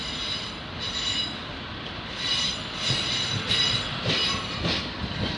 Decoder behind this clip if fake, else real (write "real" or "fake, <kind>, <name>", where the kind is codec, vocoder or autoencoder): real